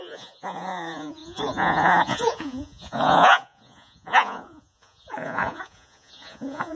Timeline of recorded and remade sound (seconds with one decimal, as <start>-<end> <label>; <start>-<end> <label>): 0.0-6.8 remade